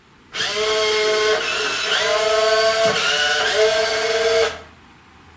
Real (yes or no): yes